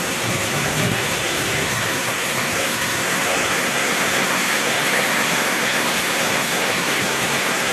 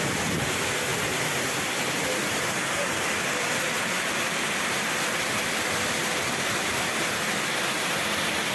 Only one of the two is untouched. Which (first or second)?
second